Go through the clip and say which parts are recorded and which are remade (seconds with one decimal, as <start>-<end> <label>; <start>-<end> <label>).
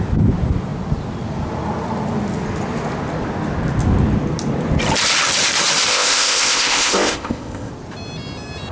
0.0-5.9 recorded; 5.9-7.7 remade; 7.7-8.7 recorded